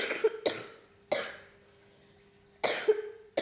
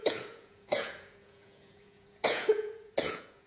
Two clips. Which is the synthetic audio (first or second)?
second